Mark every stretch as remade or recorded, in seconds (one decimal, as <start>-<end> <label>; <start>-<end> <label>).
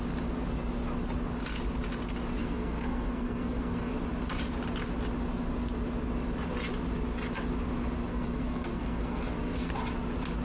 0.0-2.4 recorded; 2.4-3.9 remade; 3.9-8.1 recorded; 8.1-9.7 remade; 9.7-10.4 recorded